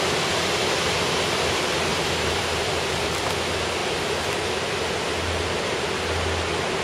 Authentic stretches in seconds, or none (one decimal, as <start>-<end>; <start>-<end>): 0.0-1.9; 3.3-6.8